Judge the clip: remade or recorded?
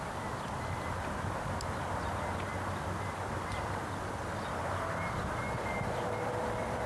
recorded